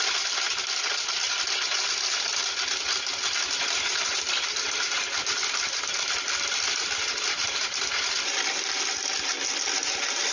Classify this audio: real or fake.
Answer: real